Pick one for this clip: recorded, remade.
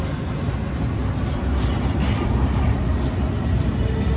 recorded